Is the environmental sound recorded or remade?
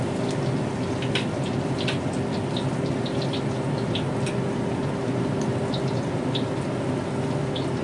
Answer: recorded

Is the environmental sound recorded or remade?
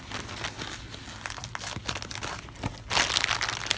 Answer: recorded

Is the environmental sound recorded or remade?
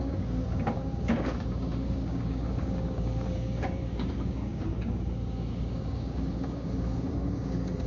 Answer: remade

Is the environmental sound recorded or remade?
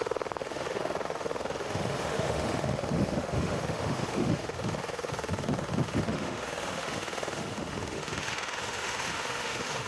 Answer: remade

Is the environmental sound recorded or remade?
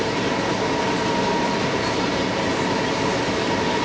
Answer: recorded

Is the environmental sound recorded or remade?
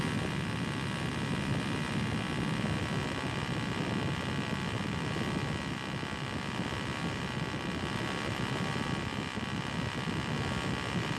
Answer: recorded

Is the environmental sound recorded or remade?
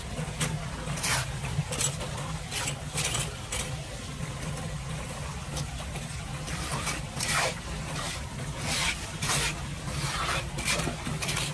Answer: recorded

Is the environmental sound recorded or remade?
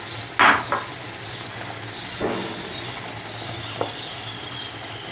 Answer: recorded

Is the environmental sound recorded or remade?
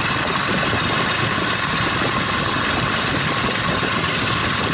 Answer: recorded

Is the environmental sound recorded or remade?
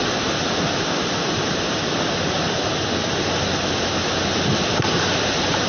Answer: recorded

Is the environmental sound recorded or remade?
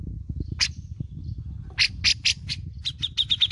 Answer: recorded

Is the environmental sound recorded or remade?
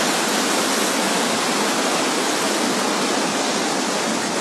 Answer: recorded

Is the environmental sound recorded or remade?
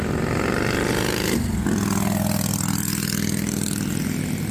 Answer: recorded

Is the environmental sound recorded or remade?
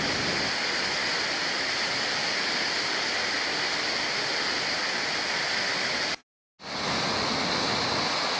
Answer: recorded